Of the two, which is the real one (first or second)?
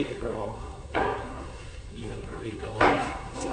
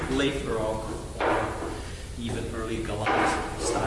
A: second